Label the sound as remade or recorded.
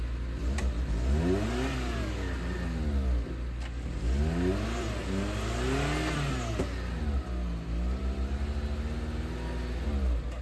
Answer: recorded